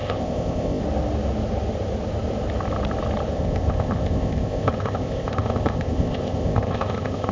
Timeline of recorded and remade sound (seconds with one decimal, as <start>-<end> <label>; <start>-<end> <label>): 0.0-0.8 remade; 0.8-3.3 recorded; 3.3-7.3 remade